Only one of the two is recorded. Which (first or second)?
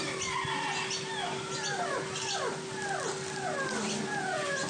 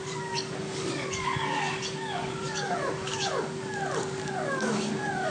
first